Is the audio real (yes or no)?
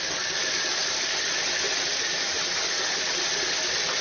yes